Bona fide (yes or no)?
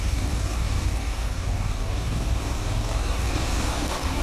no